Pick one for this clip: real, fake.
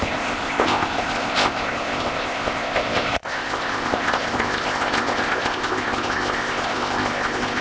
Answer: fake